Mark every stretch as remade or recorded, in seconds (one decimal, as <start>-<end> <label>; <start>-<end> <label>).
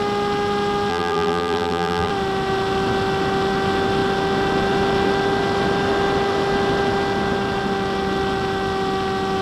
0.0-0.9 recorded; 0.9-2.1 remade; 2.1-9.4 recorded